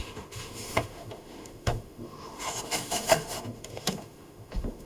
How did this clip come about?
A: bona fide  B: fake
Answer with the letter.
B